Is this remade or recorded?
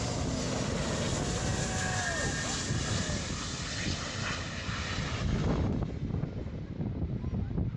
recorded